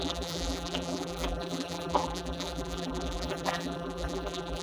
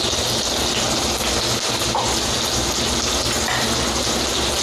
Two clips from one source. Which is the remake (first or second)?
first